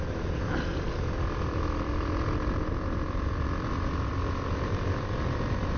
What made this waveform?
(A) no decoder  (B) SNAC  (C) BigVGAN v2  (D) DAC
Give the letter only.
C